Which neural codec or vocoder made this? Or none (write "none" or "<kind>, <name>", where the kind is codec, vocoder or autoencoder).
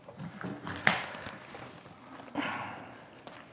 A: none